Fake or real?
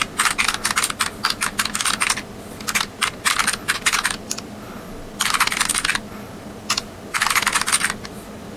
real